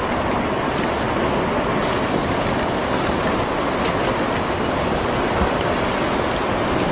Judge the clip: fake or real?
real